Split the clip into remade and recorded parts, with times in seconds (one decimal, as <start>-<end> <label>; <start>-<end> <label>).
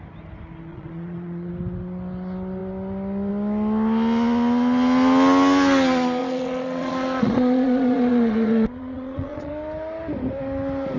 0.0-0.7 recorded; 0.7-1.5 remade; 1.5-6.2 recorded; 6.2-9.5 remade; 9.5-11.0 recorded